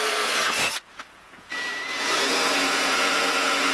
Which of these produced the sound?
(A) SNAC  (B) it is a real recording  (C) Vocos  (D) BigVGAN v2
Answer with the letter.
C